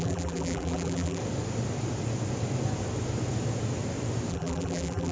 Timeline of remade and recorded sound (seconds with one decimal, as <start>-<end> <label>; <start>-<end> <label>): 0.0-1.2 remade; 1.2-4.3 recorded; 4.3-5.1 remade